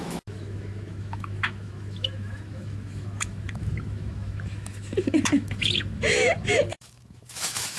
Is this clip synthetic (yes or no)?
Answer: yes